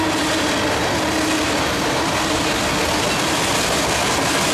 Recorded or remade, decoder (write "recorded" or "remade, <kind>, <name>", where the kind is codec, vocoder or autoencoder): recorded